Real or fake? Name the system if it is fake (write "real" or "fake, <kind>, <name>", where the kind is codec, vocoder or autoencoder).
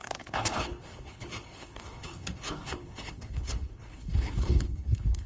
fake, codec, HILCodec